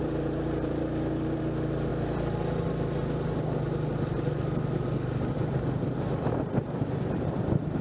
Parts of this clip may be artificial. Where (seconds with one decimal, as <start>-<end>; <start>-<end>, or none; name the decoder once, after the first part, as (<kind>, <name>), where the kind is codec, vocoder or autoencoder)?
0.0-1.9 (vocoder, BigVGAN v2); 6.3-7.8